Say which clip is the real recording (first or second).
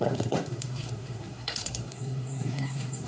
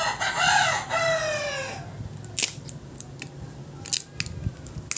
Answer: second